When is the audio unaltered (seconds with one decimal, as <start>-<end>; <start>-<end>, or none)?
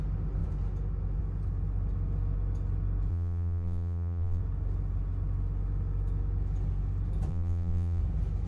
0.0-3.1; 4.4-7.3; 8.0-8.5